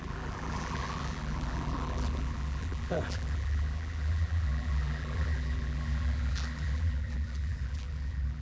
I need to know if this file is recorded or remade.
remade